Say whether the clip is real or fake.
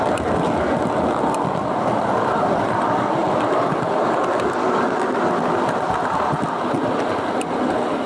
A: real